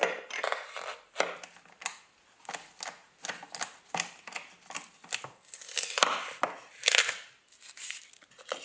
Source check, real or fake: real